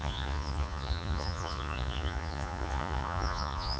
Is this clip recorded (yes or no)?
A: no